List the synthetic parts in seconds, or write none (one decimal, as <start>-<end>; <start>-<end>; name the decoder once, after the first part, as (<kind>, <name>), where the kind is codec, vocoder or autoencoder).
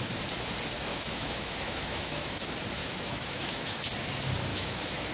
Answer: 0.9-2.4 (autoencoder, DAC-VAE); 2.8-3.8; 4.5-5.1